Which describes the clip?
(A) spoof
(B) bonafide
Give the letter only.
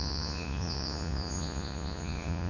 A